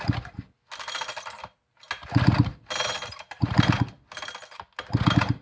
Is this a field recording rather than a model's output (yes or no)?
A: yes